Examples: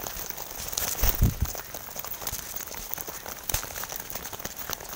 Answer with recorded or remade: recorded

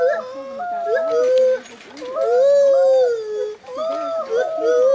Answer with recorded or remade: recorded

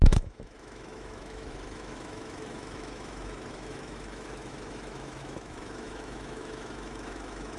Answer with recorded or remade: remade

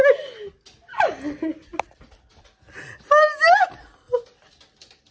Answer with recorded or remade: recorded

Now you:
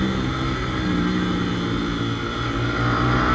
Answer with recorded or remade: recorded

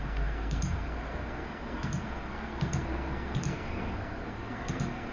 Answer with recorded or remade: remade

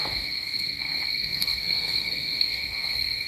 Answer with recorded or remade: remade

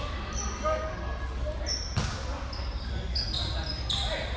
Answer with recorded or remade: recorded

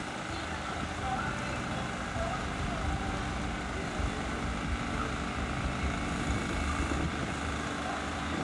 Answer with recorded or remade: recorded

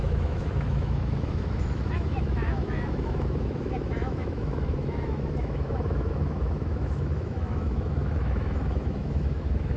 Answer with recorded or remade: remade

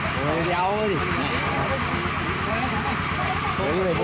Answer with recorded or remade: recorded